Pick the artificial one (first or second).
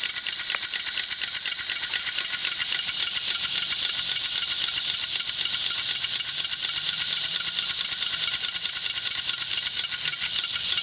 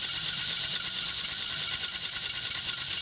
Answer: second